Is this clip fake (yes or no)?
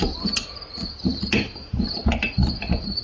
no